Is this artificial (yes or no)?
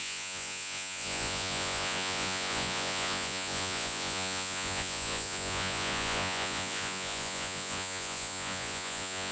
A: yes